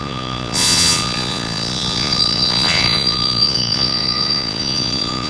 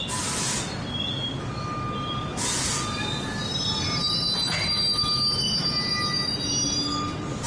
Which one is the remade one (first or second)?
first